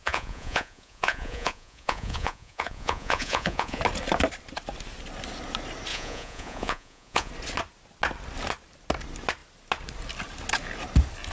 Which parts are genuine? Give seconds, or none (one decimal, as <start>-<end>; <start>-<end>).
3.8-5.9; 7.3-11.3